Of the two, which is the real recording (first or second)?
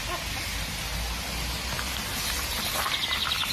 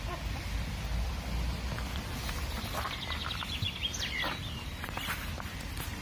first